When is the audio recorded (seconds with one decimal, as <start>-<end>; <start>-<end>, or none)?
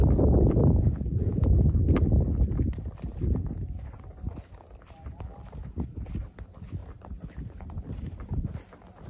0.0-3.1; 4.0-6.8; 8.5-9.1